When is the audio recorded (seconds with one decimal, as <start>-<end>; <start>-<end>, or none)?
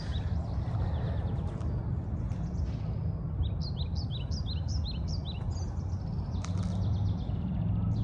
0.0-8.0